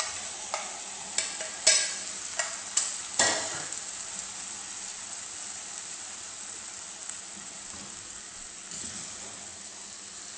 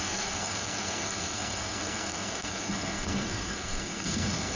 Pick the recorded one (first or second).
first